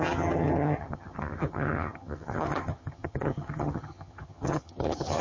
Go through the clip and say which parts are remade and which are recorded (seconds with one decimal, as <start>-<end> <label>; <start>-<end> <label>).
0.0-5.2 remade